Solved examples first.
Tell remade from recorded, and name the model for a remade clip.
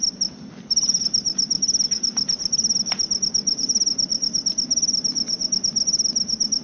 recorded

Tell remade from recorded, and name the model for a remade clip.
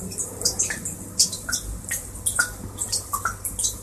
recorded